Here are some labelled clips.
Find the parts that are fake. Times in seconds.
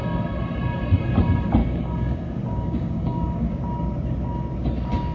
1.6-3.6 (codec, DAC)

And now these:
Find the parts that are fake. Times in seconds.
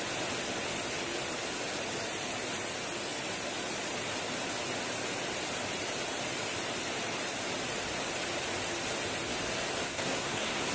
9.9-10.7 (codec, SNAC)